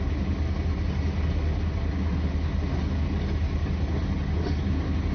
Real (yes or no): yes